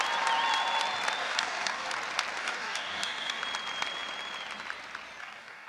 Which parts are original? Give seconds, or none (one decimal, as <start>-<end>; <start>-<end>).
0.0-1.2; 1.9-2.4; 3.4-5.2

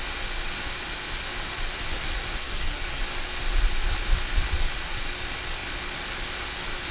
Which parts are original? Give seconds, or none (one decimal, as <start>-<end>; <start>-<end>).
0.0-2.4; 3.0-6.9

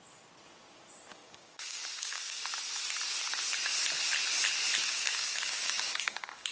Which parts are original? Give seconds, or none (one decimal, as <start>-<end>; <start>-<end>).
0.0-1.1; 2.4-4.8

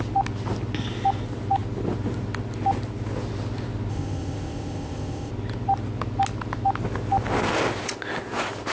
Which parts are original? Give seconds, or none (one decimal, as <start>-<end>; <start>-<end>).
0.0-3.9; 5.3-8.7

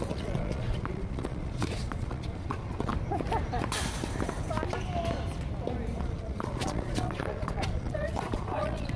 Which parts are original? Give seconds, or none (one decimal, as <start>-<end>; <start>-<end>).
2.9-6.0